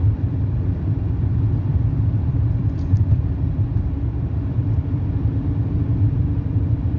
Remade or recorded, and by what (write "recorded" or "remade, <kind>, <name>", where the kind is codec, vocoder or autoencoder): remade, vocoder, BigVGAN v2